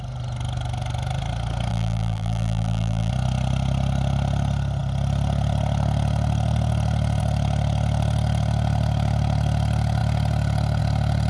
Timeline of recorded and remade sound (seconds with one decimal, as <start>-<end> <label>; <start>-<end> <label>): 0.0-1.7 recorded; 1.7-3.1 remade; 3.1-11.3 recorded